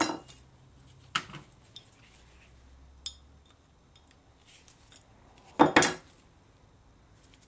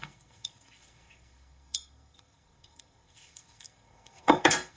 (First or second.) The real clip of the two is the first